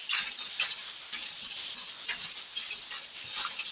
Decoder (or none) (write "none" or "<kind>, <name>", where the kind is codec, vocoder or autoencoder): none